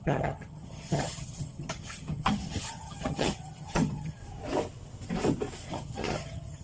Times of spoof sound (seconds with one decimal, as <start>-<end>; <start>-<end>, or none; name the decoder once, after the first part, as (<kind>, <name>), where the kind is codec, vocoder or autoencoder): 0.0-4.2 (vocoder, HiFi-GAN); 5.7-6.6